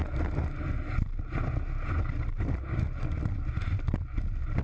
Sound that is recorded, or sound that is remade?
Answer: recorded